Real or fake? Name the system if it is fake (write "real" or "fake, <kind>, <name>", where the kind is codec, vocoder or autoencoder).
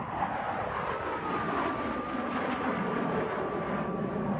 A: fake, vocoder, BigVGAN v2